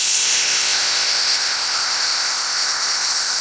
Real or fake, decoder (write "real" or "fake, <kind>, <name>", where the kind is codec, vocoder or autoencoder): fake, codec, ZipCodec